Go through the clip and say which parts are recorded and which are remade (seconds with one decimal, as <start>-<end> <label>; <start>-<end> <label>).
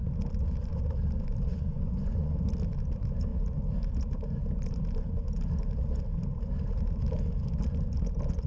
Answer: 0.0-1.5 recorded; 1.5-2.3 remade; 2.3-8.5 recorded